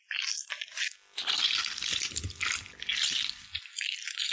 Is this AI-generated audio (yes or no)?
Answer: no